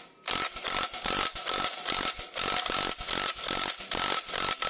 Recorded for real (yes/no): yes